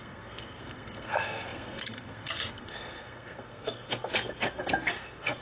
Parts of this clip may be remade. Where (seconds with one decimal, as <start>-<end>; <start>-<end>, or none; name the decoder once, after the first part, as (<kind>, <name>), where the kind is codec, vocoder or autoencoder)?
0.0-5.4 (codec, SNAC)